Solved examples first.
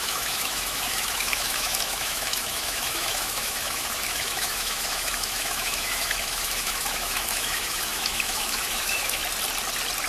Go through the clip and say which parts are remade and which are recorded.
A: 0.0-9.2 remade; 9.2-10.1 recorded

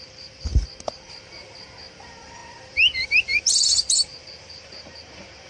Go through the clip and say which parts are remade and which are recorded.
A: 0.0-0.5 remade; 0.5-2.0 recorded; 2.0-5.5 remade

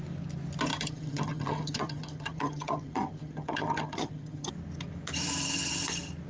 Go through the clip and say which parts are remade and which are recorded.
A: 0.0-0.7 recorded; 0.7-4.5 remade; 4.5-6.3 recorded